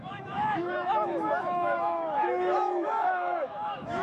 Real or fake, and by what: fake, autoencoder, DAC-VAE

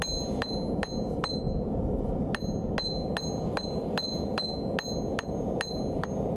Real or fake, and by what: real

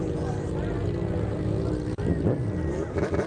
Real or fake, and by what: real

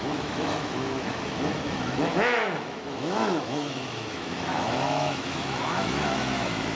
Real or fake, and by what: fake, autoencoder, DAC-VAE